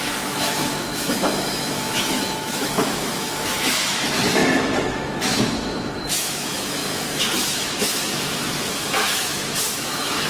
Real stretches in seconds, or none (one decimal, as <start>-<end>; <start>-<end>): none